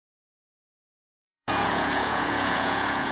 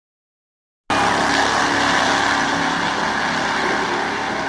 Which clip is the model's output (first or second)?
first